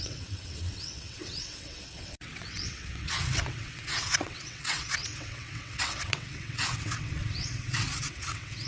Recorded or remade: remade